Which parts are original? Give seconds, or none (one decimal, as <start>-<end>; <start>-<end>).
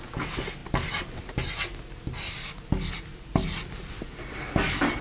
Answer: 0.0-5.0